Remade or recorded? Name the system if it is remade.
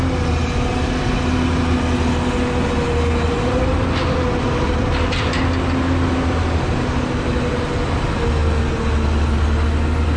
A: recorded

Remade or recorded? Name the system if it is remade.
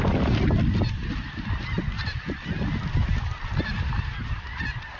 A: recorded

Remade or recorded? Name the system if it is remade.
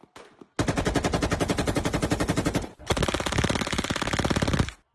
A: recorded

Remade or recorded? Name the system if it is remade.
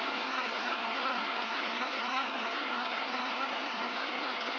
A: remade, codec, SNAC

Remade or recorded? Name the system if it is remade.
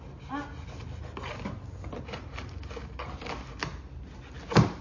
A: recorded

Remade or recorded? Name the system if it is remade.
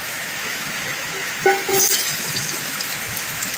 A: remade, autoencoder, DAC-VAE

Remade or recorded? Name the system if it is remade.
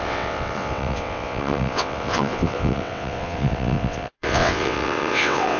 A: remade, vocoder, WaveNeXt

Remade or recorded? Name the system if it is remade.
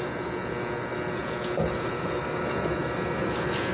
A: recorded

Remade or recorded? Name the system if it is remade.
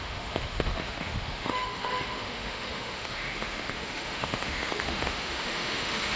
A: remade, autoencoder, DAC-VAE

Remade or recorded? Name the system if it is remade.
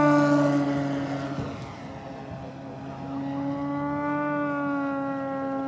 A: recorded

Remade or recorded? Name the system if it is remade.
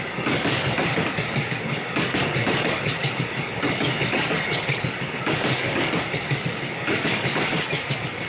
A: remade, codec, DAC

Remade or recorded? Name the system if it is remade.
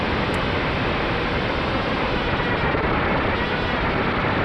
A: recorded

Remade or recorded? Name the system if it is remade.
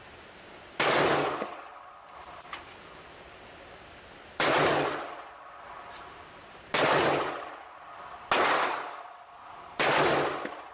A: recorded